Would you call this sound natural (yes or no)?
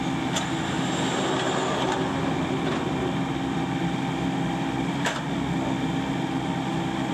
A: yes